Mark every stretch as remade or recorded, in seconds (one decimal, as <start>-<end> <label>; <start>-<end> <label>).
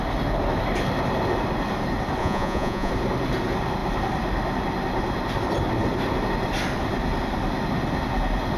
0.0-2.2 recorded; 2.2-2.9 remade; 2.9-8.6 recorded